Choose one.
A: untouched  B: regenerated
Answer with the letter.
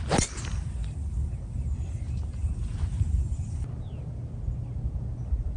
A